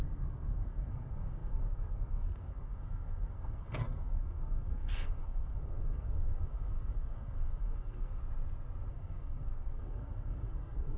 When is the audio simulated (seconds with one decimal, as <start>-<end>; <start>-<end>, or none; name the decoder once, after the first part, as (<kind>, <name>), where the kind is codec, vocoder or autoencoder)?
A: 0.0-8.2 (codec, SNAC); 8.9-11.0